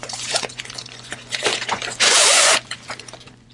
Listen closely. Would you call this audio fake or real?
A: fake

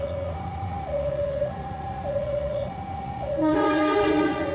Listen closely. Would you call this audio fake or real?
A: fake